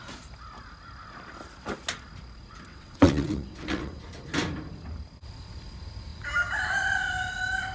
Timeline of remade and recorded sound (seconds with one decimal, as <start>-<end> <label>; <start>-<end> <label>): 0.0-2.7 recorded; 2.7-4.0 remade; 4.0-7.7 recorded